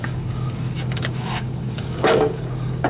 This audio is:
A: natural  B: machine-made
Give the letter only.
B